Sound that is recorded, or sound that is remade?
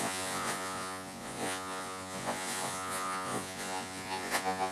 remade